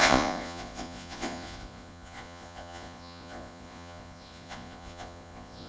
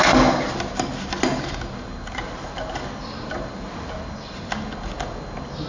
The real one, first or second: second